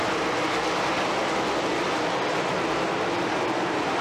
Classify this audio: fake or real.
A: real